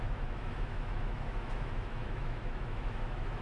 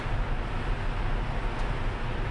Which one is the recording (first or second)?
second